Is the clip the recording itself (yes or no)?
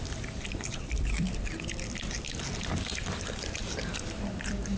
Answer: no